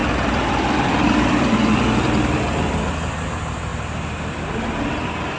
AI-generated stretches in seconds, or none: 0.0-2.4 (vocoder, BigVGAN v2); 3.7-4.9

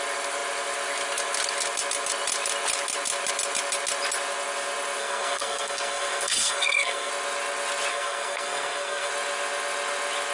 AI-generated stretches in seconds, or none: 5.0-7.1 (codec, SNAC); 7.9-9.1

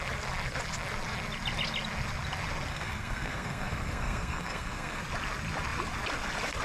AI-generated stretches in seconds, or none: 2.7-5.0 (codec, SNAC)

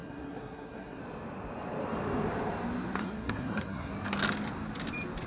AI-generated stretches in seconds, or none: 0.0-1.0 (codec, SNAC); 3.0-3.9

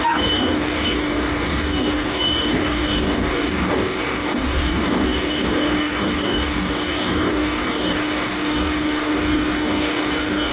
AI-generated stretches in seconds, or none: 0.0-10.5 (codec, DAC)